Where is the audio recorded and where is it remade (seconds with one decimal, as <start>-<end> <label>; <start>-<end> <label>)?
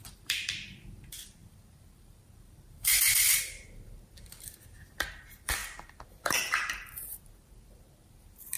0.0-8.6 remade